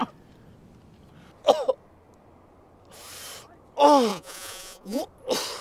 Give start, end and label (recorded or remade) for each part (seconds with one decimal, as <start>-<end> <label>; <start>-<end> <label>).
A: 0.0-4.1 recorded; 4.1-5.0 remade; 5.0-5.6 recorded